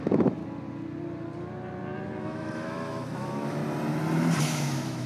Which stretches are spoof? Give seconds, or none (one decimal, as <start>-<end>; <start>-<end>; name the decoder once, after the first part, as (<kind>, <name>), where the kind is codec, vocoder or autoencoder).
0.0-0.4 (autoencoder, DAC-VAE); 2.2-3.6; 4.4-5.1